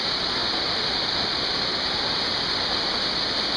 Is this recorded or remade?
recorded